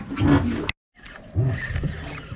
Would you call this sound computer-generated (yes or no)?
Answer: no